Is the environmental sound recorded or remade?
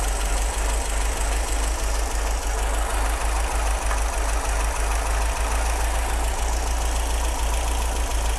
recorded